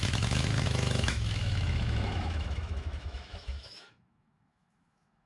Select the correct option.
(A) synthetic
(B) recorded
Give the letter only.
A